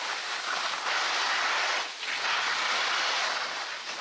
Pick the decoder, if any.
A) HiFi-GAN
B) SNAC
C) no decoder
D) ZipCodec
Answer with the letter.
C